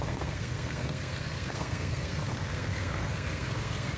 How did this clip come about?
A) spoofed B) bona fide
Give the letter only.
A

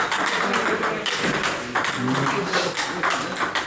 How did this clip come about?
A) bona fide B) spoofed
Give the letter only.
A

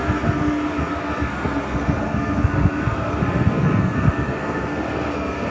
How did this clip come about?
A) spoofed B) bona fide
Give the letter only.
A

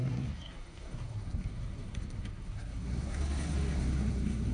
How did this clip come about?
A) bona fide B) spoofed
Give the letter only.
B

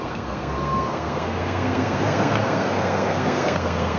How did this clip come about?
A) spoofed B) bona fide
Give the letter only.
A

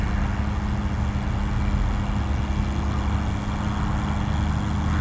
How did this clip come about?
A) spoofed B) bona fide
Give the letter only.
B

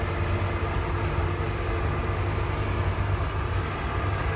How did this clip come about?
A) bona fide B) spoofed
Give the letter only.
A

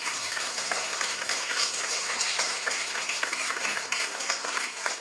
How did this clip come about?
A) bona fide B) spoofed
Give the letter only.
B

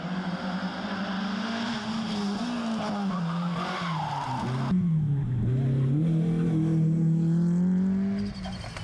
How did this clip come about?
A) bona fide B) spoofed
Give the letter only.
A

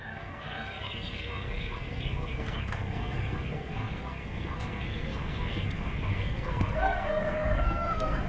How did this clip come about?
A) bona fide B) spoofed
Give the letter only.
B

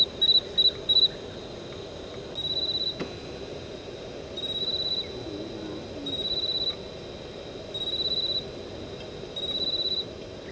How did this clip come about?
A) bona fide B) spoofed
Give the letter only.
A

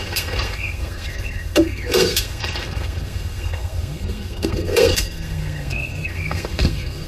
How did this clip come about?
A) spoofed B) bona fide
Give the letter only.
A